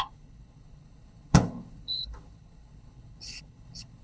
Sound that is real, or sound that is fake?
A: fake